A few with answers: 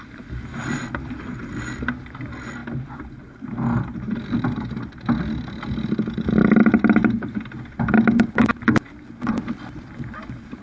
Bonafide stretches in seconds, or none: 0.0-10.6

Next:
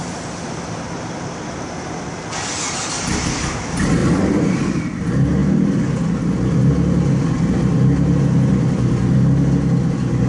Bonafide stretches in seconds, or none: 0.0-4.0; 4.8-10.3

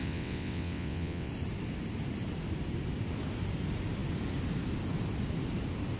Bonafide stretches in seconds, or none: 1.3-6.0

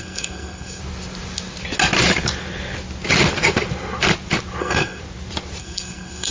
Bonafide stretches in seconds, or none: 0.8-4.6; 5.0-5.6

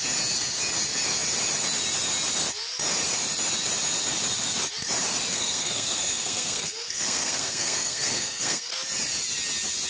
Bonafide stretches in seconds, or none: 0.0-5.3; 8.7-9.9